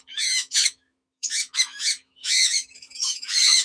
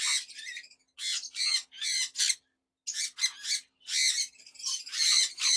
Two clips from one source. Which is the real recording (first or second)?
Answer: second